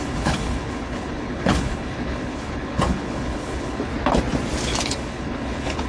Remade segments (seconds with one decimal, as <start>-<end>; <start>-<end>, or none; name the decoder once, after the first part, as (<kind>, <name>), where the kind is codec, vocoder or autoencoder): 0.0-3.9 (codec, HILCodec); 4.8-5.9